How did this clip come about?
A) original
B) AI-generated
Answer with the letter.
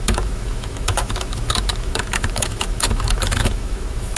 B